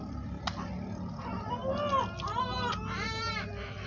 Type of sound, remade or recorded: recorded